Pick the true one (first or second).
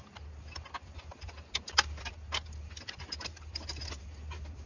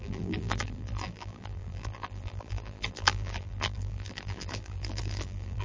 first